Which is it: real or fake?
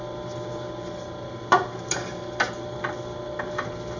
real